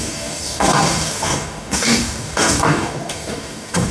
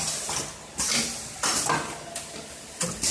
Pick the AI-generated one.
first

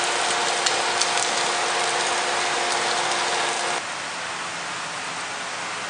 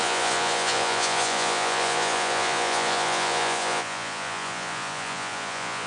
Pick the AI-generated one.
second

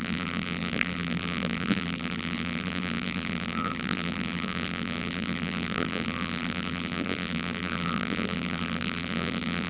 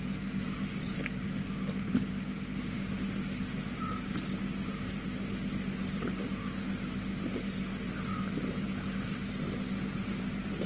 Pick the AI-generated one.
first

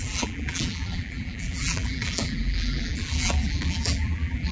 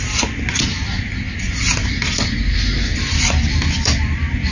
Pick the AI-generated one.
first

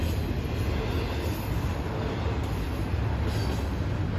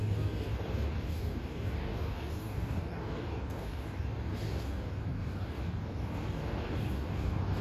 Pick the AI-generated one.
second